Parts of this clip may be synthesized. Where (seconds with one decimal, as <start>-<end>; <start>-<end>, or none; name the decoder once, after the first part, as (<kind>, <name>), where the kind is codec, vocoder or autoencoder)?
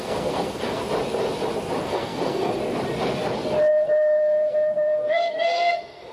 0.0-0.8 (codec, SNAC); 1.8-2.6; 3.7-6.1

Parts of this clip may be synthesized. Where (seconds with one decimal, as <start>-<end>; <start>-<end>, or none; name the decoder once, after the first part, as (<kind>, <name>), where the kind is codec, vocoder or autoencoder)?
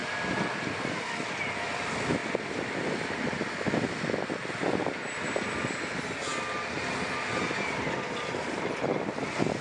none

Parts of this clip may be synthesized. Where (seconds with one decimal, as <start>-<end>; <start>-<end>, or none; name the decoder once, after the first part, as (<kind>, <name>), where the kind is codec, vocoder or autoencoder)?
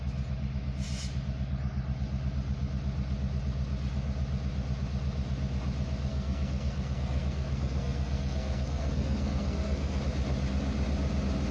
6.1-10.0 (codec, SNAC)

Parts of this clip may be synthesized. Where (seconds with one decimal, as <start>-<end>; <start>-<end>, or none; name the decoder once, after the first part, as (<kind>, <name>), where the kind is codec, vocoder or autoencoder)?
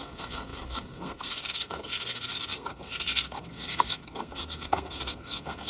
0.0-5.7 (codec, SNAC)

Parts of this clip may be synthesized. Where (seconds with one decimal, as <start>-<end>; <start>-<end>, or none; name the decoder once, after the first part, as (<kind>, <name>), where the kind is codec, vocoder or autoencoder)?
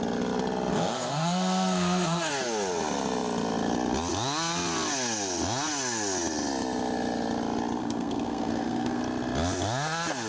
0.7-2.3 (codec, SNAC); 7.8-9.0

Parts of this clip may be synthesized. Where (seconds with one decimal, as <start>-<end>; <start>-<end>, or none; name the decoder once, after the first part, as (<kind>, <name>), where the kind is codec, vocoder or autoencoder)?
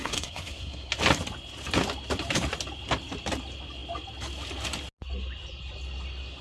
0.0-0.9 (codec, SNAC)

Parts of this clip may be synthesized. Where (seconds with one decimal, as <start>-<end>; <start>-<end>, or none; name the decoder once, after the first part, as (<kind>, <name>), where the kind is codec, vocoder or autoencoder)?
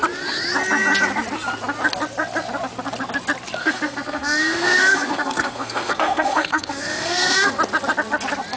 3.6-7.5 (codec, SNAC)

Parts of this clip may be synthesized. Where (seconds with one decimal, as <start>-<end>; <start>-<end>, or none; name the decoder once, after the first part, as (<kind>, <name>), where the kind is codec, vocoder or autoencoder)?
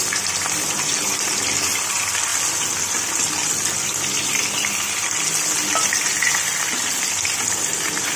none